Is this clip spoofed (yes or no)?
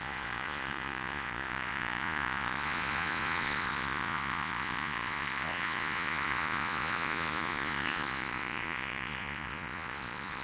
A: yes